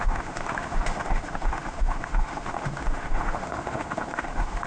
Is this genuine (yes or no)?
no